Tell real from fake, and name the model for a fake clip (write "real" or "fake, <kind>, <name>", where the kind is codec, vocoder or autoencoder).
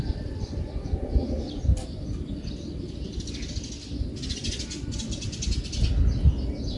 real